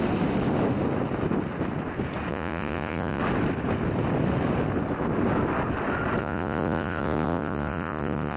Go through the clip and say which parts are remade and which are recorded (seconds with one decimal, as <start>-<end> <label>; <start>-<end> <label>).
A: 0.0-2.3 recorded; 2.3-3.2 remade; 3.2-6.2 recorded; 6.2-8.4 remade